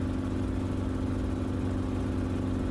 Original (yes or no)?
yes